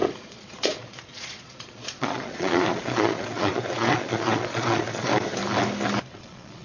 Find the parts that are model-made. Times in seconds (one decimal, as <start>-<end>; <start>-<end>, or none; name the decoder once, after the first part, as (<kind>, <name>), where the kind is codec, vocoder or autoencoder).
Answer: 0.0-5.1 (vocoder, Vocos); 6.1-6.6